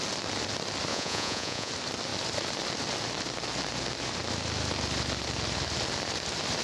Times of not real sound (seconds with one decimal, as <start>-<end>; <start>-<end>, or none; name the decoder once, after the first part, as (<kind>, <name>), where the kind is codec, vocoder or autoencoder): 0.9-1.7 (vocoder, Vocos)